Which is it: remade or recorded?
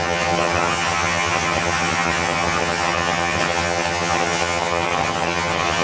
remade